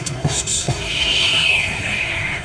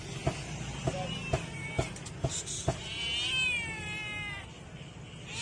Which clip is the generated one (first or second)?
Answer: first